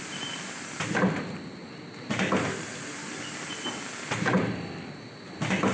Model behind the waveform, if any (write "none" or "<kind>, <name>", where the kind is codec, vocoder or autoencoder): none